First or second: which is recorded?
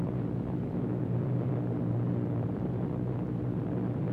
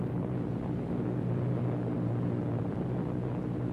second